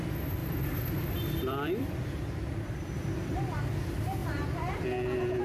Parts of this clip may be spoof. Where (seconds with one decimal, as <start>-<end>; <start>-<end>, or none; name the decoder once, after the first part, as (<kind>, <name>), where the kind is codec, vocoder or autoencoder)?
0.4-3.6 (vocoder, BigVGAN v2); 4.2-5.4